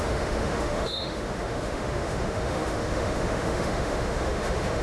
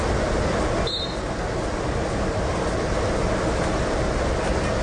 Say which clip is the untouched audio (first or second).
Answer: second